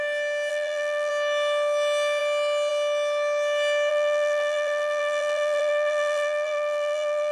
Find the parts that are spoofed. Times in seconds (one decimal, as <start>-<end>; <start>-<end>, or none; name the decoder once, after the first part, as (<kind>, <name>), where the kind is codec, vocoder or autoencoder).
0.5-1.1 (vocoder, BigVGAN v2); 3.9-7.3